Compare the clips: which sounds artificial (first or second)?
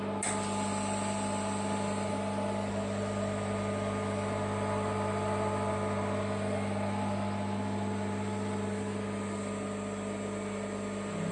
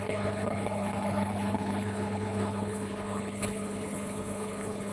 second